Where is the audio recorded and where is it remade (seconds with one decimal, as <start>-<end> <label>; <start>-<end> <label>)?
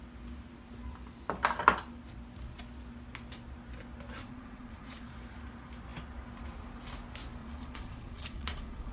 0.0-4.2 recorded; 4.2-5.1 remade; 5.1-7.4 recorded; 7.4-8.9 remade